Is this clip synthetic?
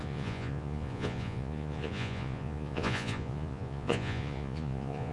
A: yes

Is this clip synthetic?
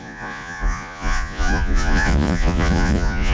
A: yes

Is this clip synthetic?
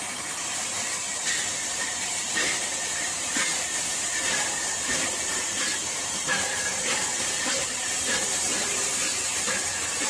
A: yes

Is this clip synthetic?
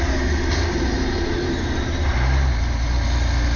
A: no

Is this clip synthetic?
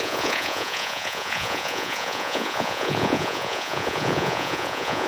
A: yes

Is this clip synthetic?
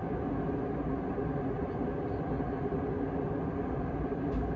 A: no